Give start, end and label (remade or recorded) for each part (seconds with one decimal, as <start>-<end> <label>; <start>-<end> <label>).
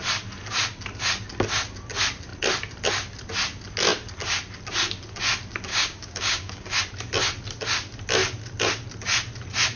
0.0-5.7 recorded; 5.7-6.8 remade; 6.8-9.8 recorded